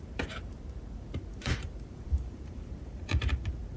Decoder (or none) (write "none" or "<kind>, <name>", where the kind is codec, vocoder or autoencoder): vocoder, BigVGAN v2